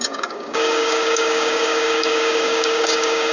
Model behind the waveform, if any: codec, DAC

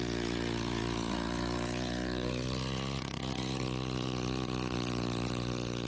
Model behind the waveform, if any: vocoder, Vocos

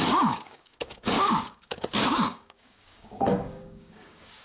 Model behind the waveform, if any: codec, DAC